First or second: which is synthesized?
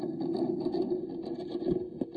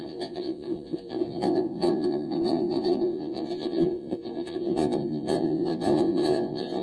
second